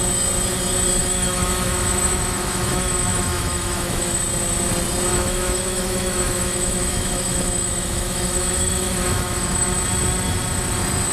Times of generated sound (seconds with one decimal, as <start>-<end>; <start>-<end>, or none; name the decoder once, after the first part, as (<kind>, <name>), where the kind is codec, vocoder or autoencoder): 1.0-4.2 (autoencoder, DAC-VAE); 5.1-9.8